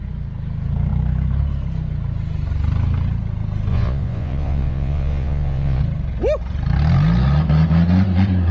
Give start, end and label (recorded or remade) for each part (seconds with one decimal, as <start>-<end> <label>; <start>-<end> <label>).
0.0-3.7 recorded; 3.7-5.8 remade; 5.8-8.5 recorded